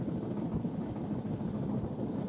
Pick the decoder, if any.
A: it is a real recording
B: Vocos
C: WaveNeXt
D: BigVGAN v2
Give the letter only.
A